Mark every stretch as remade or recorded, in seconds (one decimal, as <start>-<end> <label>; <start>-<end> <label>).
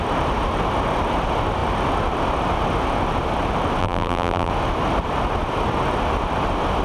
0.0-3.8 recorded; 3.8-4.5 remade; 4.5-6.8 recorded